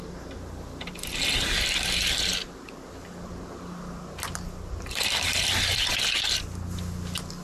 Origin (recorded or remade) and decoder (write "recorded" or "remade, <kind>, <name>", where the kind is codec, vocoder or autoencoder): recorded